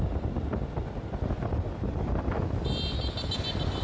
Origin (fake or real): real